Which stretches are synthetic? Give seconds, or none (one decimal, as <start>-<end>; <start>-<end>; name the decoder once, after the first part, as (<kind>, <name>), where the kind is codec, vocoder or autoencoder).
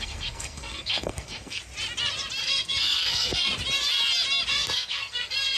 0.0-1.6 (codec, SNAC); 2.4-3.5; 4.5-5.6